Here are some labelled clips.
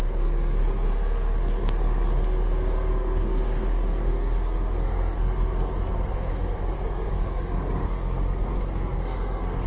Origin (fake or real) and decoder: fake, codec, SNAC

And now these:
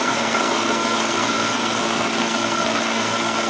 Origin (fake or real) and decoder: fake, codec, SNAC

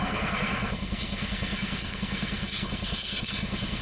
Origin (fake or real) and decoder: fake, codec, SNAC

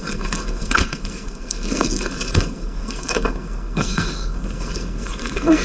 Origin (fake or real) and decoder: fake, codec, SNAC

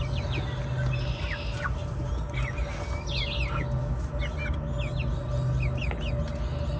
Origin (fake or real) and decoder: real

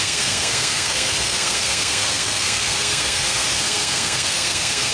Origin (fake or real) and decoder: fake, codec, SNAC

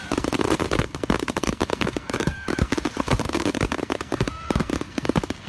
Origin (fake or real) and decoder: fake, codec, SNAC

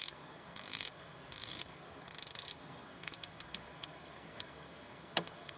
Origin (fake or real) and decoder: fake, codec, SNAC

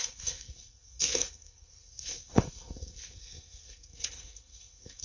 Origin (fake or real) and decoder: fake, codec, SNAC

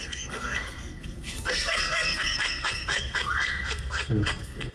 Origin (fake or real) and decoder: fake, codec, SNAC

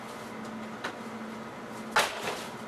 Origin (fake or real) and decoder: real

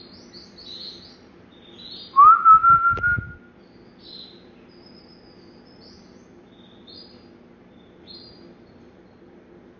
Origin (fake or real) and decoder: real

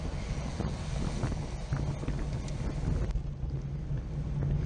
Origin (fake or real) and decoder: real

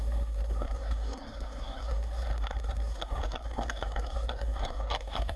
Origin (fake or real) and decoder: fake, codec, SNAC